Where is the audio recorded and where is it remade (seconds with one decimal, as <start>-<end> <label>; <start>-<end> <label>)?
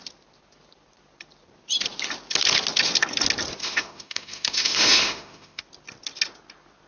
0.0-3.6 recorded; 3.6-5.6 remade; 5.6-6.9 recorded